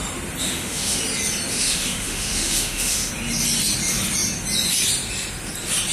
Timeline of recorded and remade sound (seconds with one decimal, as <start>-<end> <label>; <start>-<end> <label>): 0.0-0.4 recorded; 0.4-1.0 remade; 1.0-1.5 recorded; 1.5-3.1 remade; 3.1-5.9 recorded